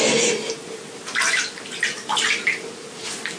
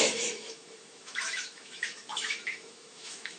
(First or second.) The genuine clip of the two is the first